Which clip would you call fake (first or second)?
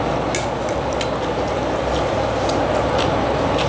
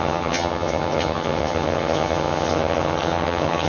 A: second